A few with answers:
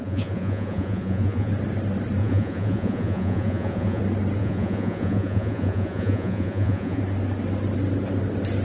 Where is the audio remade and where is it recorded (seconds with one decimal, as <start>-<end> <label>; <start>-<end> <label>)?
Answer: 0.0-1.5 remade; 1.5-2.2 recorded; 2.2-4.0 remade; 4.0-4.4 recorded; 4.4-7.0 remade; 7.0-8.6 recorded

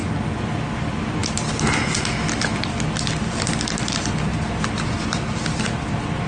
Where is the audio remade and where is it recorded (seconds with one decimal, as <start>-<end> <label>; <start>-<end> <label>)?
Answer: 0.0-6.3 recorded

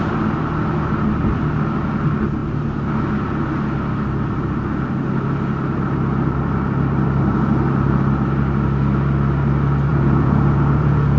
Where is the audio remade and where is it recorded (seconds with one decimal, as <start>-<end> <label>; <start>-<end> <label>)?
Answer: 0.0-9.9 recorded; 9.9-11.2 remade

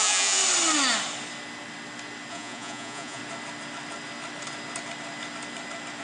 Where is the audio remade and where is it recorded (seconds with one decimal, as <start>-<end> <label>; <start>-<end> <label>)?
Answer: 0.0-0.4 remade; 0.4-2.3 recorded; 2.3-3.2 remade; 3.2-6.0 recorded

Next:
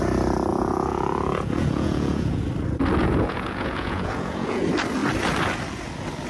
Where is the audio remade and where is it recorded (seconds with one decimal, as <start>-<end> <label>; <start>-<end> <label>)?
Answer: 0.0-0.5 recorded; 0.5-2.4 remade; 2.4-3.0 recorded; 3.0-4.6 remade; 4.6-6.3 recorded